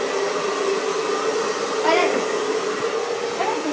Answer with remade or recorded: recorded